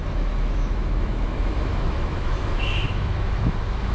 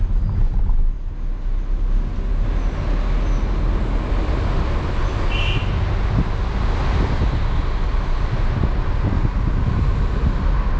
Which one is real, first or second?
second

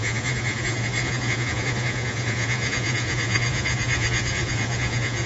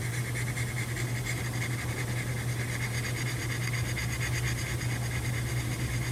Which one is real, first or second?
second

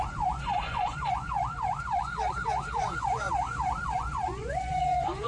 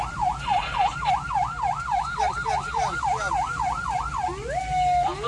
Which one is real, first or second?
second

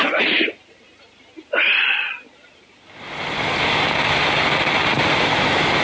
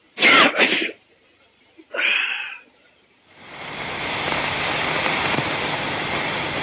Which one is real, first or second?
first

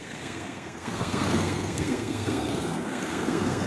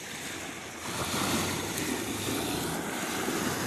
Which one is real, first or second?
second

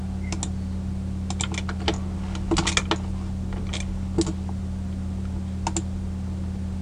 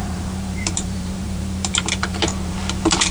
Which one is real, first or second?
first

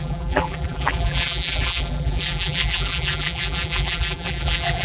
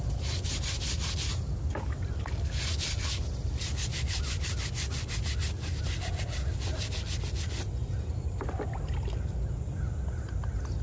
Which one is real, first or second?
second